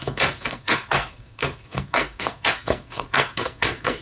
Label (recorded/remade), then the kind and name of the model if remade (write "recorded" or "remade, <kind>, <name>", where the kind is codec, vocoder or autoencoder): remade, codec, SNAC